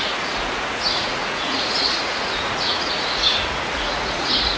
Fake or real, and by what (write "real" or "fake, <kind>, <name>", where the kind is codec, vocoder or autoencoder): fake, vocoder, Vocos